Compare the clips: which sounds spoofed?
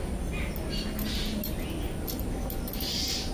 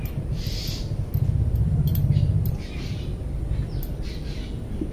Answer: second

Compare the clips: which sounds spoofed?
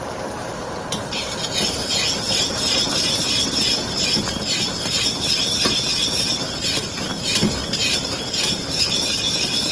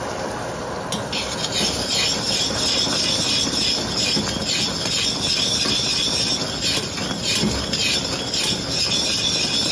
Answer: first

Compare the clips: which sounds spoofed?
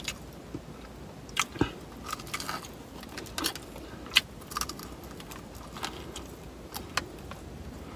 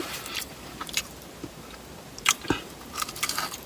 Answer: second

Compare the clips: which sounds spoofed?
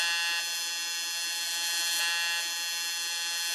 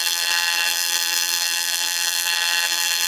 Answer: second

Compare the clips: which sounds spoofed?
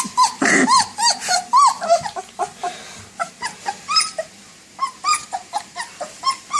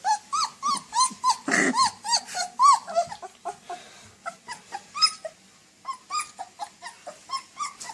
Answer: first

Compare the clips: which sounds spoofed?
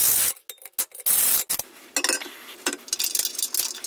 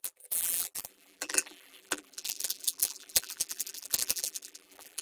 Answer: second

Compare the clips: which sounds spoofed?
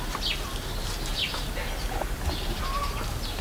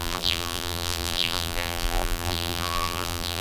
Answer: second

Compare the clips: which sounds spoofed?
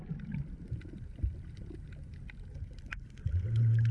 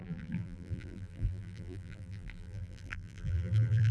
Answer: second